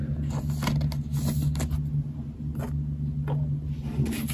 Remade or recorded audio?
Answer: recorded